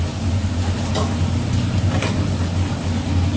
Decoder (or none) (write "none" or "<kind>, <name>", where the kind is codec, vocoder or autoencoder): none